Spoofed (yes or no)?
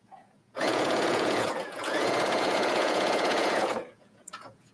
yes